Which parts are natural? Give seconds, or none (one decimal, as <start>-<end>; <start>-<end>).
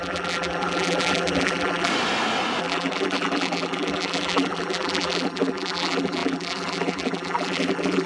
1.9-2.6